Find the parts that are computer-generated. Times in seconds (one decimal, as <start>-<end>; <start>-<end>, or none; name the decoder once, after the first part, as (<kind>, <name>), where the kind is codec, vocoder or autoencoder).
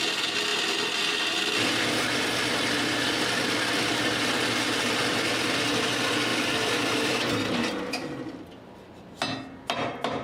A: 6.3-7.2 (vocoder, BigVGAN v2)